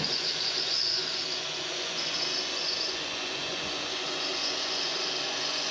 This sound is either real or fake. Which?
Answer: fake